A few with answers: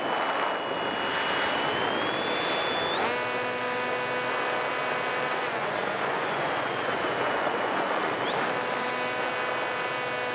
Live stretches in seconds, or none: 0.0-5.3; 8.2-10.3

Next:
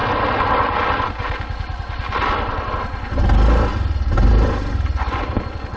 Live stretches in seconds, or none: 0.0-5.8

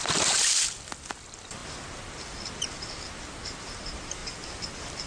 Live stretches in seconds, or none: 0.0-5.1

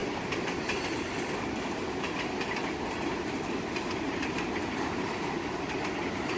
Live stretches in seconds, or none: 0.0-3.8